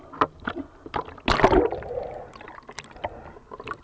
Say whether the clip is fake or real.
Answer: real